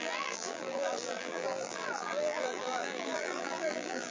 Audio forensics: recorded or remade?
remade